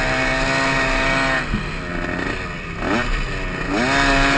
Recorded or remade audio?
recorded